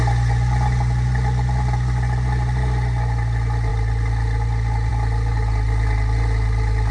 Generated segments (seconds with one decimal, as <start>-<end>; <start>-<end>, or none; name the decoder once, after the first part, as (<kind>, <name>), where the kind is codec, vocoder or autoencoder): none